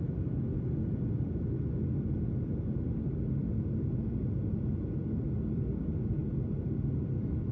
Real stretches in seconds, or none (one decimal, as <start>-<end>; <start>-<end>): 0.0-7.5